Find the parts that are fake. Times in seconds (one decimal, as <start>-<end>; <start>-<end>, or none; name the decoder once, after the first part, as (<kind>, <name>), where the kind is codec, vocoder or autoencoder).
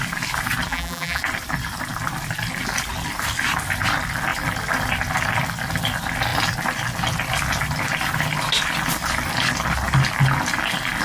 0.7-1.2 (vocoder, BigVGAN v2)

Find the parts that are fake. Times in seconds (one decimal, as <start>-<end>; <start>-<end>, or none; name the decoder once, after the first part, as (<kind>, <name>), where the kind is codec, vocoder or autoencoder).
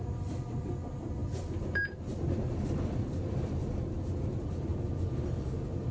none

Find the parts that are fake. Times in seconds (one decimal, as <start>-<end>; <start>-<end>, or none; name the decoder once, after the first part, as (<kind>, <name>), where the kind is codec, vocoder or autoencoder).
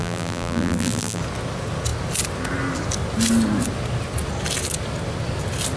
0.0-1.2 (vocoder, BigVGAN v2)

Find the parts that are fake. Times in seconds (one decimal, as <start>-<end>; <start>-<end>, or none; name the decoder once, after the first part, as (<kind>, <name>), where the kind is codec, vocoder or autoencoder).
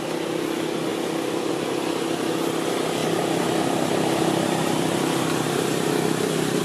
0.9-1.5 (vocoder, BigVGAN v2); 3.0-6.6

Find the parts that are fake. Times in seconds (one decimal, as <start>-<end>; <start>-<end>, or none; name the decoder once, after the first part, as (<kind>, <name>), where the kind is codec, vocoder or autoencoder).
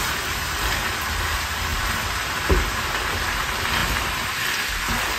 1.7-2.5 (vocoder, BigVGAN v2)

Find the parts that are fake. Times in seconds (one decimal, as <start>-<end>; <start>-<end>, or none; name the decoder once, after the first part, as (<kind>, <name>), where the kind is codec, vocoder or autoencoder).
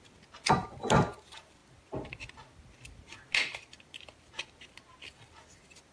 none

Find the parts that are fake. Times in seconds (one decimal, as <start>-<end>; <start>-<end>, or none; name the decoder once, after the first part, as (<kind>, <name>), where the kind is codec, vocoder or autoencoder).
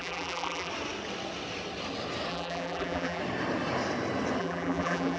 0.0-0.7 (vocoder, BigVGAN v2); 2.3-3.2; 4.4-5.2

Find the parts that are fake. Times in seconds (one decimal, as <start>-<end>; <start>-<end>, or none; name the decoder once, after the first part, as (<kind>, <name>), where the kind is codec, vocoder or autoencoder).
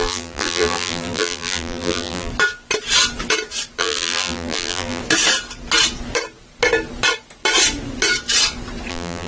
0.0-2.3 (vocoder, BigVGAN v2); 3.8-5.0; 8.9-9.3